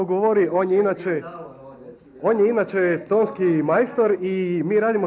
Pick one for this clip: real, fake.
real